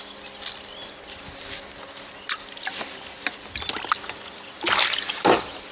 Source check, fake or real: real